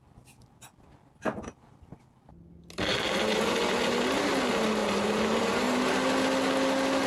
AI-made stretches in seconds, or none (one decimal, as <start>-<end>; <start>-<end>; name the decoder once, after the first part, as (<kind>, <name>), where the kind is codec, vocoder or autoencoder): 2.9-3.6 (vocoder, BigVGAN v2); 4.8-5.7